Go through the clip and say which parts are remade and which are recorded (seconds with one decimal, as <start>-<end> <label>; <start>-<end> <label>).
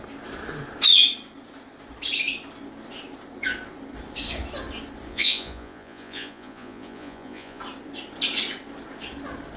0.0-5.1 recorded; 5.1-7.6 remade; 7.6-9.6 recorded